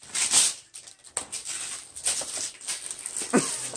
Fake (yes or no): no